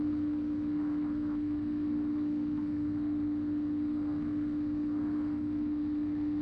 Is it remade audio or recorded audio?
remade